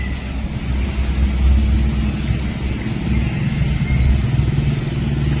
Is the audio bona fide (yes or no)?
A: yes